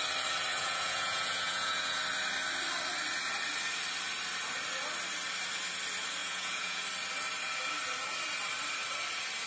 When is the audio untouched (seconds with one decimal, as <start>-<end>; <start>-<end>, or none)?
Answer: 0.0-0.5; 2.0-6.2; 6.8-9.5